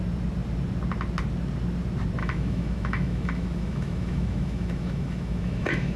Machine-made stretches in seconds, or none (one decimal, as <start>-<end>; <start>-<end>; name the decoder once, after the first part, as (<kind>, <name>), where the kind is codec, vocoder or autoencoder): 2.2-6.0 (autoencoder, DAC-VAE)